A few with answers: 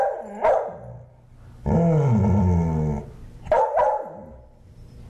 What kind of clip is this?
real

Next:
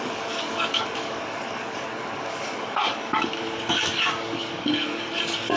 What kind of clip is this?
fake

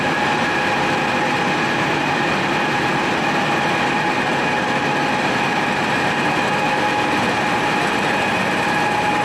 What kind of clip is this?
real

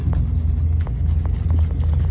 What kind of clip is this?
real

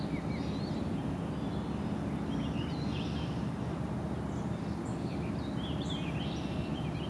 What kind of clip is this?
real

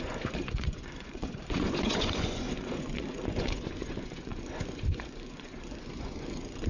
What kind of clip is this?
fake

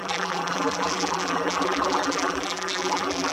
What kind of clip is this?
fake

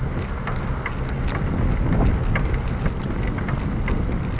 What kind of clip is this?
real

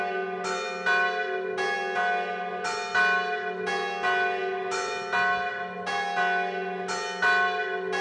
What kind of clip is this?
real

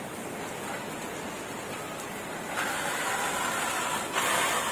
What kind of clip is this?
real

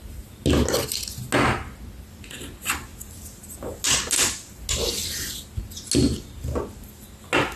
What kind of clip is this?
real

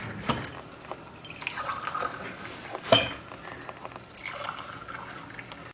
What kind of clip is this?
real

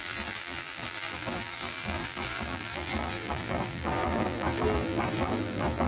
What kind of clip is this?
fake